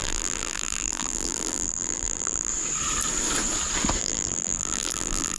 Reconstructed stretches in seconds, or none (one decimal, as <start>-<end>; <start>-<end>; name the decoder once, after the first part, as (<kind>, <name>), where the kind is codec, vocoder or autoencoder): 0.0-2.5 (vocoder, BigVGAN v2); 4.0-5.4